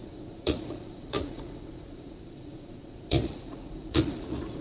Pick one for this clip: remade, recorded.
remade